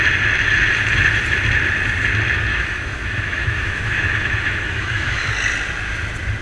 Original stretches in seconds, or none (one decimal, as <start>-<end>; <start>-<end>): 0.0-2.5; 5.3-6.4